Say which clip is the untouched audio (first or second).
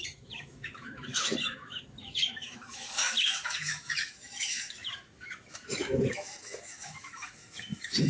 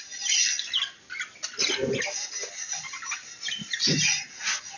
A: second